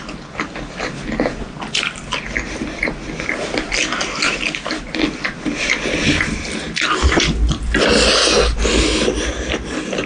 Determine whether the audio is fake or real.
real